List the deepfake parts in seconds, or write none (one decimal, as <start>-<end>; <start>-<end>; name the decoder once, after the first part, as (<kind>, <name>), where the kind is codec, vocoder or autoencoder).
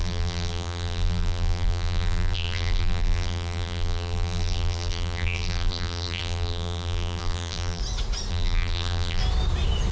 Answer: 0.0-7.8 (vocoder, BigVGAN v2); 8.3-9.2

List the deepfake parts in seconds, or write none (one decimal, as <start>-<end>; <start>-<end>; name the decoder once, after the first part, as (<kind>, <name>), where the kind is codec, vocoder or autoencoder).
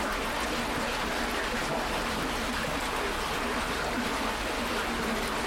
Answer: none